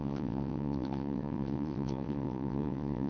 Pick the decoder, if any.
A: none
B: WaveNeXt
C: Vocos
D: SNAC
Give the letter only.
B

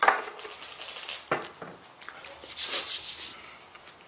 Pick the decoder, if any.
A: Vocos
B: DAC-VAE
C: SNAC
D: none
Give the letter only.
D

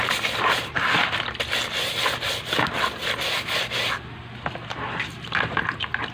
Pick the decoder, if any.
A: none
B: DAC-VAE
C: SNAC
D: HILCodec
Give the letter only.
A